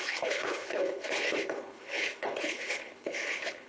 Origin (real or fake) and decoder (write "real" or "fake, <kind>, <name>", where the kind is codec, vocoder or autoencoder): fake, codec, HILCodec